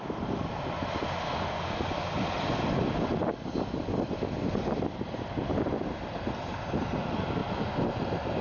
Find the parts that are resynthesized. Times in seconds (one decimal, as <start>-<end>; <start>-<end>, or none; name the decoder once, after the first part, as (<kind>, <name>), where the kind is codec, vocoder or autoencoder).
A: none